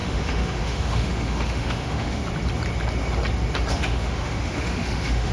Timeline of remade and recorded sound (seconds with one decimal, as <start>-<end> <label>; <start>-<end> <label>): 0.0-2.2 remade; 2.2-3.7 recorded; 3.7-5.3 remade